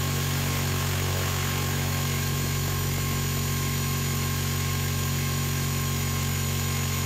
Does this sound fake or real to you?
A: fake